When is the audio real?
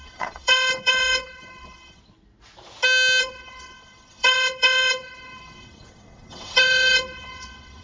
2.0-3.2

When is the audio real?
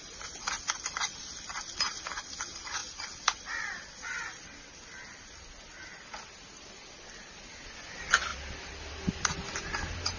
0.0-10.2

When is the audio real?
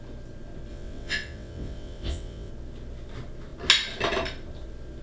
0.0-0.7; 2.5-5.0